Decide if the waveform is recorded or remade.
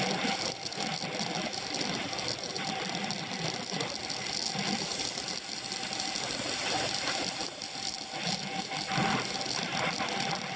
recorded